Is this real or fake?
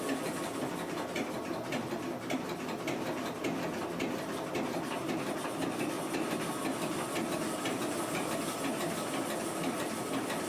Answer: real